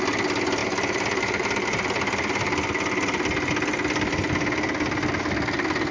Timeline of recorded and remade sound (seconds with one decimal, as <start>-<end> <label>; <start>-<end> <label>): 0.0-0.6 recorded; 0.6-3.5 remade; 3.5-5.9 recorded